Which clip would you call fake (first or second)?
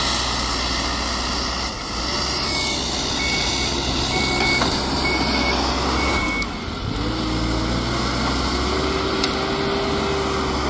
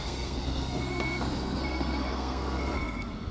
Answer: second